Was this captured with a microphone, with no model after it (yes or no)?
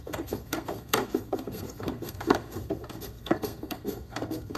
no